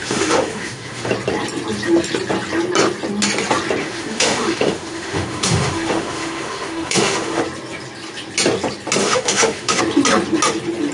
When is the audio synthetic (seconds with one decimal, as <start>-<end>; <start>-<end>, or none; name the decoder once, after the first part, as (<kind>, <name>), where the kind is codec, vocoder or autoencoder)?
0.0-1.1 (autoencoder, DAC-VAE); 3.8-7.4; 9.0-9.8